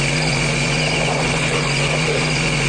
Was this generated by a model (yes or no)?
yes